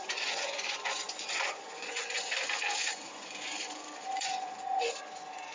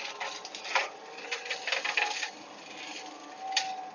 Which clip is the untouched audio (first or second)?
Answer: second